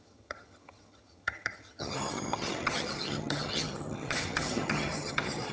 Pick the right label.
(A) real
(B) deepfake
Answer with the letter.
B